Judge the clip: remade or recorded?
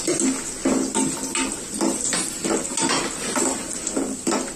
recorded